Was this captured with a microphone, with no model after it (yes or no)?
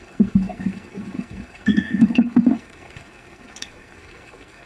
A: no